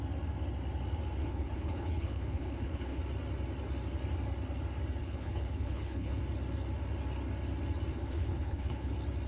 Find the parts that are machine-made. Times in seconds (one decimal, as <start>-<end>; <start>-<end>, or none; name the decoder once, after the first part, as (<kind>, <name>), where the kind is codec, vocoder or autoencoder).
1.2-3.0 (codec, HILCodec); 5.0-6.2; 7.9-8.9